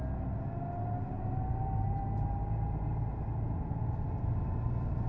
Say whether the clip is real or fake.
real